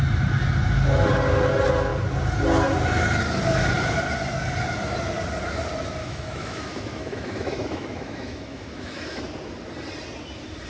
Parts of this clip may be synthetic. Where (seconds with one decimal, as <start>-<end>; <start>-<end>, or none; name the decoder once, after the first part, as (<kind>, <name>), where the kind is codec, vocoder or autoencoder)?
6.0-9.2 (autoencoder, DAC-VAE)